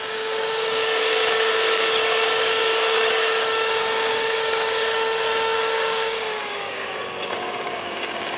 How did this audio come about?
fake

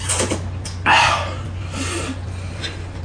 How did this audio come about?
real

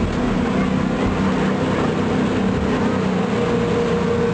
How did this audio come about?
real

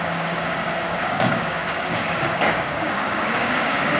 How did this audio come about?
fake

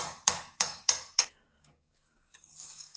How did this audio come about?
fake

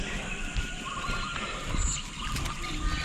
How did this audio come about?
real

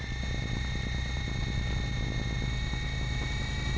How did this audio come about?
real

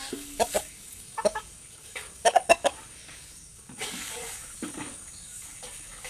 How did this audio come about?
fake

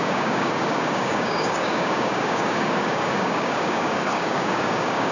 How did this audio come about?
fake